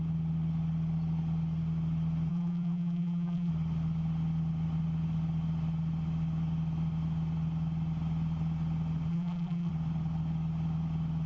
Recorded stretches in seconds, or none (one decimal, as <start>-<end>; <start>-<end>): 0.0-2.3; 3.5-9.1; 9.7-11.3